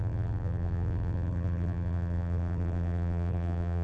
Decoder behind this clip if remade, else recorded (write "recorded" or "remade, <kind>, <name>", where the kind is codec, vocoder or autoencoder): remade, vocoder, BigVGAN v2